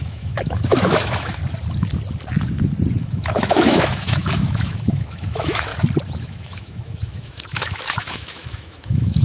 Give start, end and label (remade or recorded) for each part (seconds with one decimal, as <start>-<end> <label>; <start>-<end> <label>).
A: 0.0-1.4 remade; 1.4-3.0 recorded; 3.0-5.7 remade; 5.7-6.2 recorded; 6.2-9.2 remade